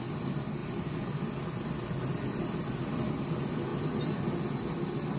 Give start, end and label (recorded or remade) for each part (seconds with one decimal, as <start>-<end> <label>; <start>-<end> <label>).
0.0-5.2 recorded